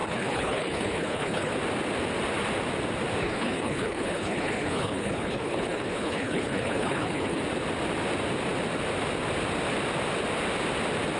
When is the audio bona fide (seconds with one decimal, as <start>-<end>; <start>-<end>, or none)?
1.5-3.2; 7.4-11.2